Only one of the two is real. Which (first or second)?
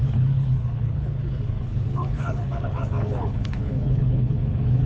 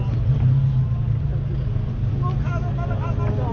second